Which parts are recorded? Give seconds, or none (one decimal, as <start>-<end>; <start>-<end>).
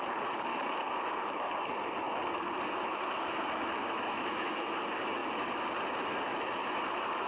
0.0-0.5; 1.5-3.8; 4.7-7.3